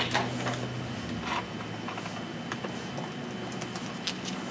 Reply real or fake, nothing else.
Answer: real